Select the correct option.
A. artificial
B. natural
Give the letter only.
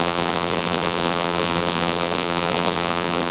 A